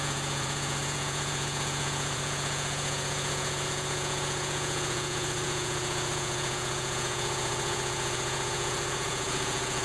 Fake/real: fake